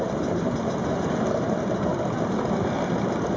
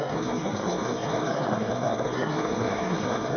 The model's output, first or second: second